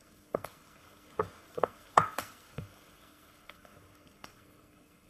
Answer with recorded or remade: remade